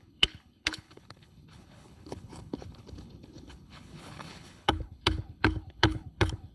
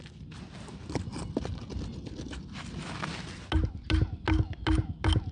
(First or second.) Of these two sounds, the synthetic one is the first